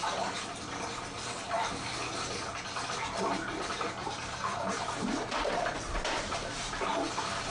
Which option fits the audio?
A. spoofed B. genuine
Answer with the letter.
B